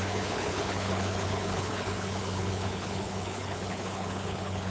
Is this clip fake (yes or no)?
yes